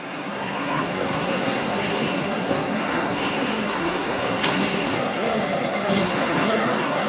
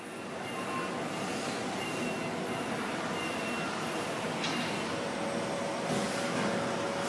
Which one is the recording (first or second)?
second